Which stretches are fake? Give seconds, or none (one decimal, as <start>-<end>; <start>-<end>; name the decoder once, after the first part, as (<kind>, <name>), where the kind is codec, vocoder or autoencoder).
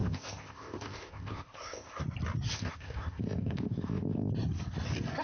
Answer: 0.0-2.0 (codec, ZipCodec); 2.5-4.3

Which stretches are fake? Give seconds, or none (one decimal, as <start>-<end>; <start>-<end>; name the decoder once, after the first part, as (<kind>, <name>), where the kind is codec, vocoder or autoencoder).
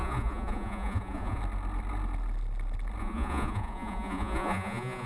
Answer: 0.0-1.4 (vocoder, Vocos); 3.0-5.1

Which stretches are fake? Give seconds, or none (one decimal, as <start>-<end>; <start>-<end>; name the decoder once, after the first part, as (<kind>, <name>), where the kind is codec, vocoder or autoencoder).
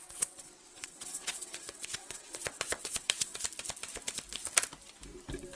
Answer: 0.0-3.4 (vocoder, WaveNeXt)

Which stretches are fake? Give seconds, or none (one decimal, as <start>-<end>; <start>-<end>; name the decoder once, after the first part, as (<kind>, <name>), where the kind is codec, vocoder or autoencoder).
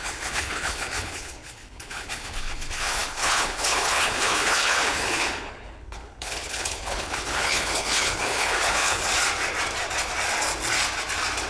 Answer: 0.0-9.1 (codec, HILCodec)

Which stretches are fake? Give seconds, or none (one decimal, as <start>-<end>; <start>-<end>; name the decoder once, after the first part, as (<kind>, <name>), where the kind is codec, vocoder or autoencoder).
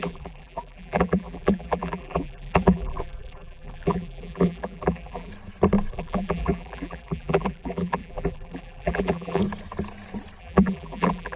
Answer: 0.0-5.3 (vocoder, BigVGAN v2); 5.9-9.4; 10.4-11.4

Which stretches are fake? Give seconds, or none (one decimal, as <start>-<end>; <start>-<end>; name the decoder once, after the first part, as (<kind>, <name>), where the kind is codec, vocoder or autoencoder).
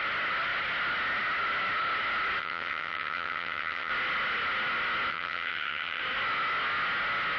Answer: 2.4-3.9 (vocoder, HiFi-GAN); 5.1-6.0